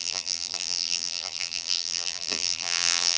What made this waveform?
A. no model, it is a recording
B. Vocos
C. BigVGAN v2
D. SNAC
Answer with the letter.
C